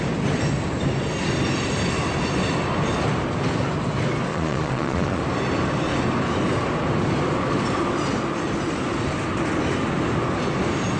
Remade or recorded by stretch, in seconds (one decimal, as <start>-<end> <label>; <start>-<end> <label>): 0.0-4.3 recorded; 4.3-5.2 remade; 5.2-11.0 recorded